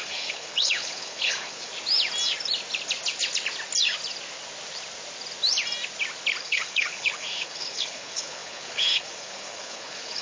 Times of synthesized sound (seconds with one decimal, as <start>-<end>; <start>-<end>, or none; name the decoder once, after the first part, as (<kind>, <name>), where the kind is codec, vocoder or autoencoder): 0.0-1.7 (codec, HILCodec); 6.4-10.2